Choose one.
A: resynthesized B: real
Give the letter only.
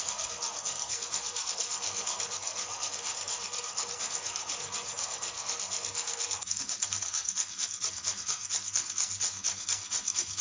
A